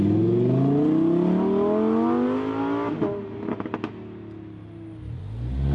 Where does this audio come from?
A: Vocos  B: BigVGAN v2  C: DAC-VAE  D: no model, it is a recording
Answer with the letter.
D